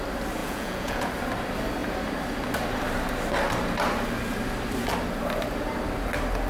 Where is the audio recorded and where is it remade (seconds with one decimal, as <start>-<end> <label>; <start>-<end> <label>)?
0.0-0.4 recorded; 0.4-1.1 remade; 1.1-6.5 recorded